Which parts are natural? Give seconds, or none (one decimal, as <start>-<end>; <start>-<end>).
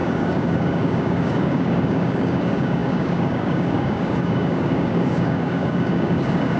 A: none